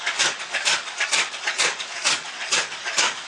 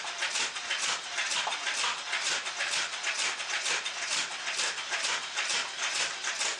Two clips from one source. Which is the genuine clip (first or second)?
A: second